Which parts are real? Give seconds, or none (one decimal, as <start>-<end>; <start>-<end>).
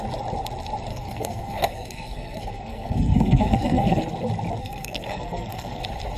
0.0-0.9; 4.0-4.6; 5.8-6.2